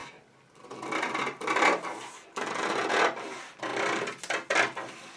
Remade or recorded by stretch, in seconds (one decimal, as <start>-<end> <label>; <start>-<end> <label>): 0.0-5.2 recorded